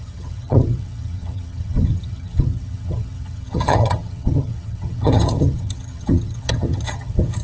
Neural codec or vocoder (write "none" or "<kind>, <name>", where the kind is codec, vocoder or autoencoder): vocoder, HiFi-GAN